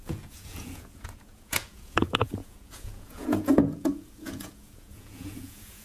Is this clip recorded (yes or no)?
no